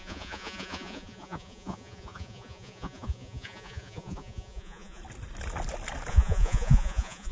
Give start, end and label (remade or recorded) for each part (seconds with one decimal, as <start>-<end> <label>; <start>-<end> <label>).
0.0-5.0 remade; 5.0-6.1 recorded; 6.1-7.3 remade